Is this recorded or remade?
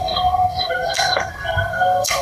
remade